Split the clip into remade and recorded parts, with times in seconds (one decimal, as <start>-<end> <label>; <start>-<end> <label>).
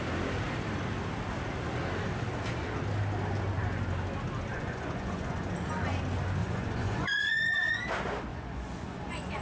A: 0.0-4.5 recorded; 4.5-5.5 remade; 5.5-6.4 recorded; 6.4-7.8 remade; 7.8-8.3 recorded; 8.3-9.4 remade